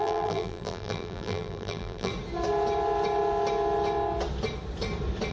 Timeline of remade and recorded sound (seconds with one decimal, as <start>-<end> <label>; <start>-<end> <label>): 0.0-2.1 remade; 2.1-5.3 recorded